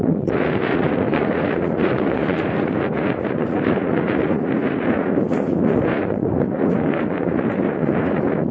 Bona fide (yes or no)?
no